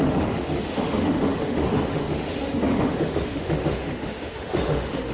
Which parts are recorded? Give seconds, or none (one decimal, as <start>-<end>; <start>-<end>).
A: none